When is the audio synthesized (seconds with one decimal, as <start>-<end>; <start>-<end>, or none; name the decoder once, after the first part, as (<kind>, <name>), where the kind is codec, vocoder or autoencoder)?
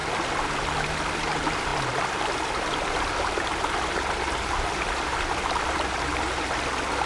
none